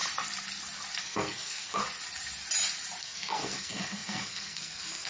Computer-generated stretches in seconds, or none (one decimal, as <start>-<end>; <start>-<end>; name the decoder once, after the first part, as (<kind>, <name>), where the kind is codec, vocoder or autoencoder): 1.0-1.8 (codec, SNAC); 3.0-5.1